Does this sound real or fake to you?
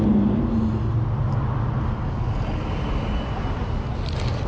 real